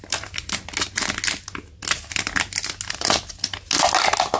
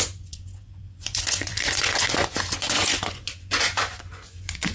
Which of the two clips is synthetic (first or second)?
second